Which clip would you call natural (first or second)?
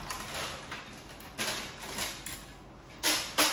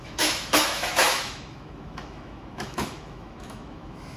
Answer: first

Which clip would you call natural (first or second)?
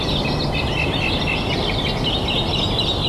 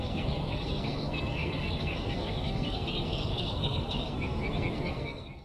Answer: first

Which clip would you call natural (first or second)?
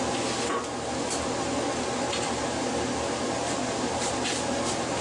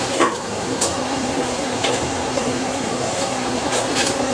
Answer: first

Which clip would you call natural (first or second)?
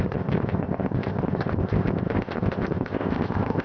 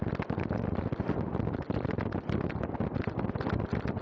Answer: second